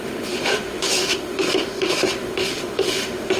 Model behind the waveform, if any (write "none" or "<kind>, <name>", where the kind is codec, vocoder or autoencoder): autoencoder, DAC-VAE